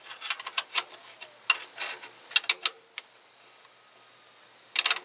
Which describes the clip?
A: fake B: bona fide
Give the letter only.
B